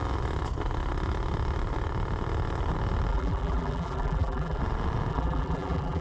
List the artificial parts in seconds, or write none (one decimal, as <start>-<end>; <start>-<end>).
3.1-4.6; 5.1-6.0